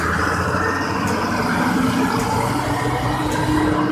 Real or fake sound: real